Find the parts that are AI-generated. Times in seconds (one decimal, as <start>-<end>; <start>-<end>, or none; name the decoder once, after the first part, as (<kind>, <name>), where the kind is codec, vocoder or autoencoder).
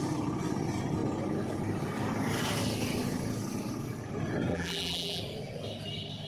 4.5-5.2 (vocoder, BigVGAN v2)